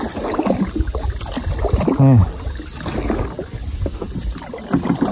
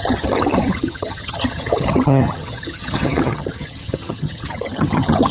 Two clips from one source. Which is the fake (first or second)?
second